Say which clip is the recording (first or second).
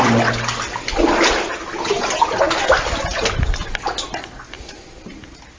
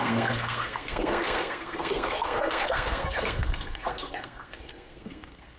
first